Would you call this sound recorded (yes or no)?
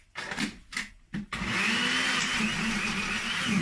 yes